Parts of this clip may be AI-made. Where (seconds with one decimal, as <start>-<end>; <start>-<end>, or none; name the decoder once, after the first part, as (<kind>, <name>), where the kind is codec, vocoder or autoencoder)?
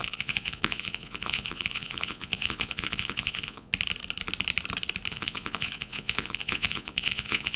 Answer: 0.0-3.7 (vocoder, Vocos); 5.1-7.6